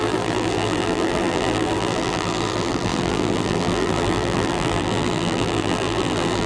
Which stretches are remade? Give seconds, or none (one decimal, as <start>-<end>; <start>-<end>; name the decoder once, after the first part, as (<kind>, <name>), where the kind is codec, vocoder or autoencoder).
0.0-6.5 (vocoder, BigVGAN v2)

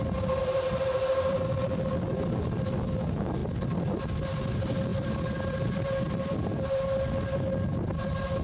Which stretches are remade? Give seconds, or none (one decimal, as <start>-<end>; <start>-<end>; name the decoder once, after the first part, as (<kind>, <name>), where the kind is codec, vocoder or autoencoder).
0.4-1.9 (vocoder, BigVGAN v2); 3.4-4.4; 4.9-6.7

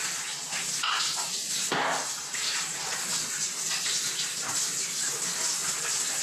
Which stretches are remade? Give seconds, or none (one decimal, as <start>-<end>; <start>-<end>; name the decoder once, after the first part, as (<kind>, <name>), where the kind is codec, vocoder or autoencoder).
5.6-6.2 (vocoder, BigVGAN v2)

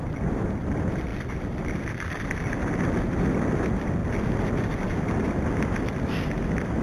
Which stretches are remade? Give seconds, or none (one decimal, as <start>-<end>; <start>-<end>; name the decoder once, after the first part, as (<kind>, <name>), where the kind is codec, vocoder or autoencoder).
none

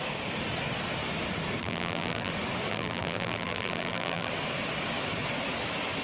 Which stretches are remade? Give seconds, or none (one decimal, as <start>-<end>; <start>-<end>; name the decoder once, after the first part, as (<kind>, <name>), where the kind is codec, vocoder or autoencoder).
1.6-2.3 (vocoder, BigVGAN v2); 2.7-4.3

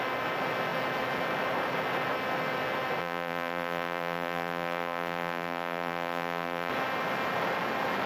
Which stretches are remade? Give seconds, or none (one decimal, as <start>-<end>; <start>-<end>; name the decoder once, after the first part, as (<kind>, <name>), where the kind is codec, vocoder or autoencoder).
3.0-6.7 (vocoder, BigVGAN v2)